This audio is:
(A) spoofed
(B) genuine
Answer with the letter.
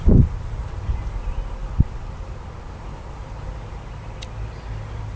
B